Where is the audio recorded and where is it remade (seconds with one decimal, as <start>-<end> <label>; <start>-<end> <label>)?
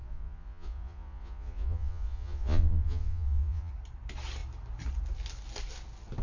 0.0-3.7 remade; 3.7-6.2 recorded